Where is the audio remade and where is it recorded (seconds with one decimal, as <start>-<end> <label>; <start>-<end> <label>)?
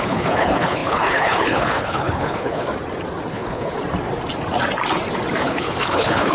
0.0-2.7 remade; 2.7-3.3 recorded; 3.3-3.7 remade; 3.7-5.4 recorded; 5.4-6.3 remade